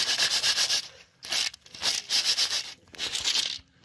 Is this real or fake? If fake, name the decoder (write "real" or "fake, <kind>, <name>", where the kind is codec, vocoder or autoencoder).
real